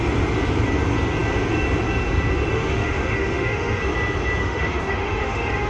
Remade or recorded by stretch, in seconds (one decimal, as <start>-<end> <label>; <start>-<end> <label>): 0.0-2.5 recorded; 2.5-3.8 remade; 3.8-4.4 recorded; 4.4-5.7 remade